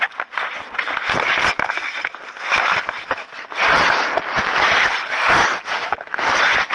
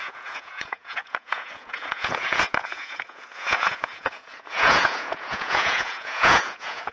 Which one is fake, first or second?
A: second